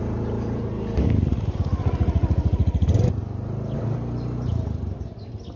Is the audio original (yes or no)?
yes